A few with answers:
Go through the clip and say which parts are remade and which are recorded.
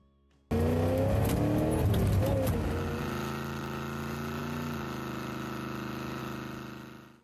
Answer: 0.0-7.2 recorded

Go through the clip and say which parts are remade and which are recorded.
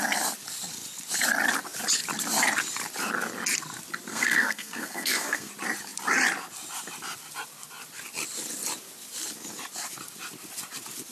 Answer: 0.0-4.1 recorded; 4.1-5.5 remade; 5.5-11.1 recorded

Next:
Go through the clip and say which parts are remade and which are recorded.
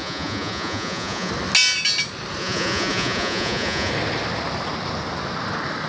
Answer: 0.0-1.3 remade; 1.3-2.4 recorded; 2.4-3.9 remade; 3.9-5.9 recorded